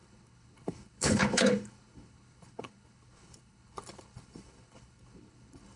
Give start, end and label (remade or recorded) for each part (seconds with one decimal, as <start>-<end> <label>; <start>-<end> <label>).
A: 0.0-5.8 remade